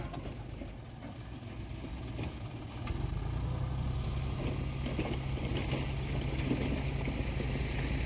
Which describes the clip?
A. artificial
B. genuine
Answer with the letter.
B